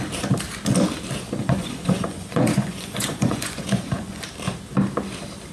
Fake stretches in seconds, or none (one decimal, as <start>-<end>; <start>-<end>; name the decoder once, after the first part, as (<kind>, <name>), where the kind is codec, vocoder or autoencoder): 1.4-4.2 (vocoder, Vocos)